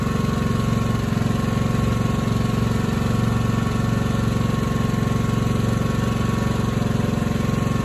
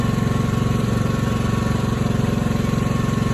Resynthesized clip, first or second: second